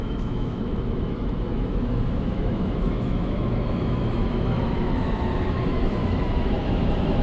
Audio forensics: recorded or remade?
remade